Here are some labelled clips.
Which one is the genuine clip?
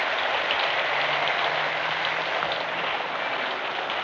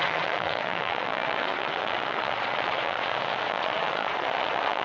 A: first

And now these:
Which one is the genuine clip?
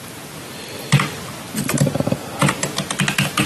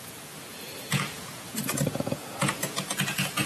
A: first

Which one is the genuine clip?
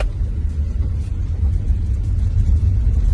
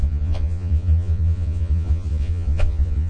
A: first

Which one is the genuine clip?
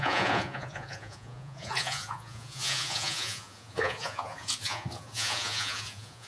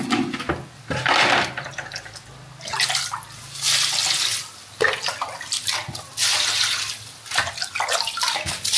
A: second